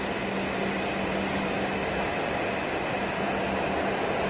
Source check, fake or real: real